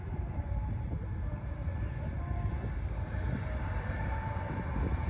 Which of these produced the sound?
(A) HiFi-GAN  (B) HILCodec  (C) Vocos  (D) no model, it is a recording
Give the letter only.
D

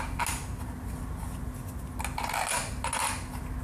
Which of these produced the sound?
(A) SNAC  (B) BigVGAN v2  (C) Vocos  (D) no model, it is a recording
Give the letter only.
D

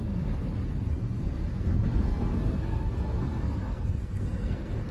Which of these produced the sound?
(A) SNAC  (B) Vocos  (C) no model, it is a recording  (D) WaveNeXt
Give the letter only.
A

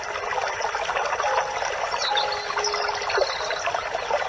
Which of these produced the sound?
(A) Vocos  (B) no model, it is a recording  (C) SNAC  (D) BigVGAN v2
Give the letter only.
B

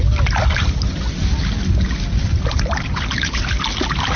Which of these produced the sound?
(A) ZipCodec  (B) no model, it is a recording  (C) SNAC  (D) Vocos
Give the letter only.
B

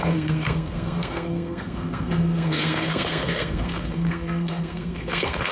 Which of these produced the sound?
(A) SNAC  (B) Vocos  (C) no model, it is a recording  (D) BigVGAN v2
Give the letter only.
A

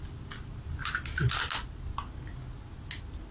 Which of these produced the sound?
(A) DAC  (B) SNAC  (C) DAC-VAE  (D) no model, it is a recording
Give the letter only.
D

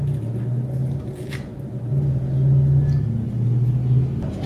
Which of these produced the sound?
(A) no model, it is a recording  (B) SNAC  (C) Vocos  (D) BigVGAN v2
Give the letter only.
A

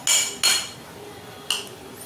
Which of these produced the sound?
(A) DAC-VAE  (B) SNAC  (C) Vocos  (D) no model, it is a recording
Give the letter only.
D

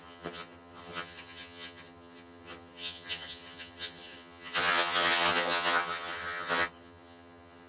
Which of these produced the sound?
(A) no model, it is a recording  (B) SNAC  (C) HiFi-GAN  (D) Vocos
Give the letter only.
C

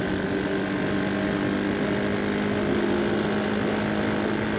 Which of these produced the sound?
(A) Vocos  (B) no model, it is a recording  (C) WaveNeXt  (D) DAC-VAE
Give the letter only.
B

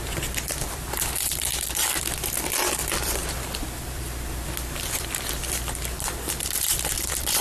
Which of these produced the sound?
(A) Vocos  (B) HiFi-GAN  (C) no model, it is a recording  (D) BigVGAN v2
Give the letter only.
D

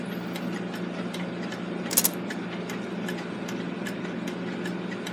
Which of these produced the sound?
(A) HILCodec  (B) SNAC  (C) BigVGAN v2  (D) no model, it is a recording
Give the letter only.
D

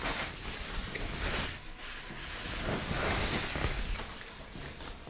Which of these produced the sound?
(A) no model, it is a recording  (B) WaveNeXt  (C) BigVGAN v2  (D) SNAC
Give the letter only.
A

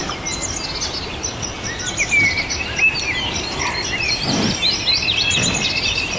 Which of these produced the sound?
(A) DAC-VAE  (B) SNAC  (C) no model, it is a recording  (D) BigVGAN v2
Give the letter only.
C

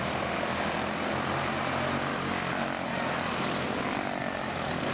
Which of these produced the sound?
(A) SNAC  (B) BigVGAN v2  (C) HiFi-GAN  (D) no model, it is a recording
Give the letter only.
D